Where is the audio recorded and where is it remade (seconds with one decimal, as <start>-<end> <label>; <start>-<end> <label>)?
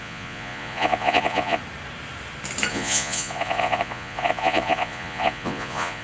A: 0.0-1.6 remade; 1.6-2.7 recorded; 2.7-6.0 remade